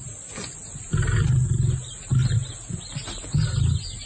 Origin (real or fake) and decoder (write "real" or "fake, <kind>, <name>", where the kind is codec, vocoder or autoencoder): real